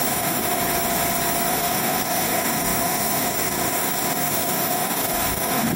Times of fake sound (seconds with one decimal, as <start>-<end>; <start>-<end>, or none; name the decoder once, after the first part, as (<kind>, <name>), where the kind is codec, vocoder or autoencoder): 0.0-0.6 (codec, DAC); 1.5-5.8